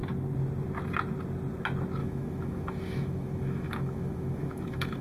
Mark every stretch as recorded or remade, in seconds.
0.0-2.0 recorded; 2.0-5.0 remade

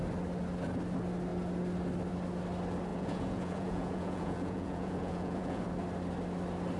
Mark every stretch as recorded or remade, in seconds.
0.0-2.9 recorded; 2.9-5.6 remade; 5.6-6.8 recorded

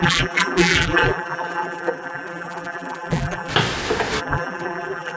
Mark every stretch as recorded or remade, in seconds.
0.0-3.5 remade; 3.5-4.2 recorded; 4.2-5.2 remade

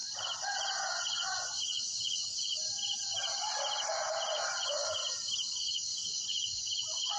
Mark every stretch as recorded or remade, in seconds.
0.0-0.7 recorded; 0.7-2.5 remade; 2.5-4.1 recorded; 4.1-5.0 remade; 5.0-5.6 recorded; 5.6-7.2 remade

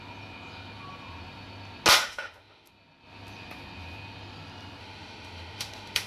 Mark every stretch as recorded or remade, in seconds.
0.0-2.0 recorded; 2.0-2.7 remade; 2.7-4.8 recorded; 4.8-6.1 remade

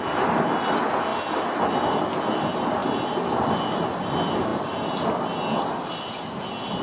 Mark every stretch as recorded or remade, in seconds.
0.0-6.8 recorded

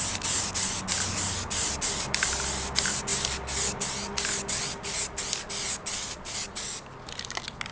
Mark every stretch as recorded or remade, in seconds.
0.0-7.7 recorded

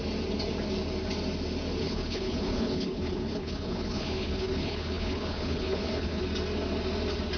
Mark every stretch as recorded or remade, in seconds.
0.0-1.8 recorded; 1.8-6.2 remade; 6.2-7.4 recorded